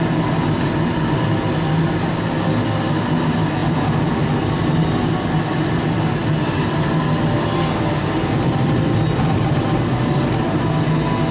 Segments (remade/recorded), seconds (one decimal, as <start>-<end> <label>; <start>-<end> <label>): 0.0-3.6 recorded; 3.6-4.1 remade; 4.1-11.3 recorded